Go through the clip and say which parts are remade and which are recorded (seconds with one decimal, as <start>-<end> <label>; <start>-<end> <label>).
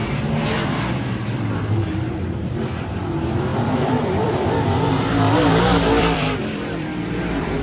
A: 0.0-1.5 recorded; 1.5-7.6 remade